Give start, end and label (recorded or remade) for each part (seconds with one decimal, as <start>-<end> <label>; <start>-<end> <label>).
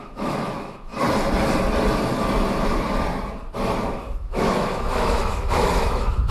0.0-0.9 remade; 0.9-3.9 recorded; 3.9-6.3 remade